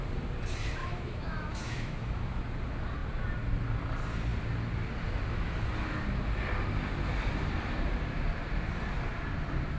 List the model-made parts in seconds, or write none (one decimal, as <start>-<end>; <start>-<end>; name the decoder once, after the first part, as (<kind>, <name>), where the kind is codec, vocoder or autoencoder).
0.8-2.4 (autoencoder, DAC-VAE)